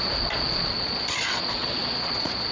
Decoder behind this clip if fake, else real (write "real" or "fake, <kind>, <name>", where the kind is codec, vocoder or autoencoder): fake, vocoder, Vocos